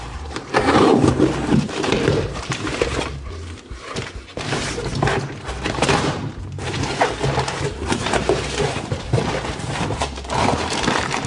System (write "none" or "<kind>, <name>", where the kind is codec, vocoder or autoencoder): vocoder, BigVGAN v2